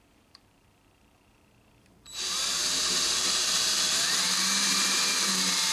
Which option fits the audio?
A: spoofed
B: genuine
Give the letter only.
A